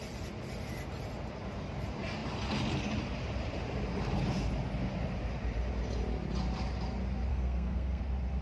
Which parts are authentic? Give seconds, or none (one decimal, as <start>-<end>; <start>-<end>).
0.0-7.3; 8.0-8.4